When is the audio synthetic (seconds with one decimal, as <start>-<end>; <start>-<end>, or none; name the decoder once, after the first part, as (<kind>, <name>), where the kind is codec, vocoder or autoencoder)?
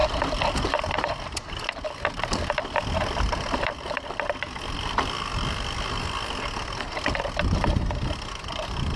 none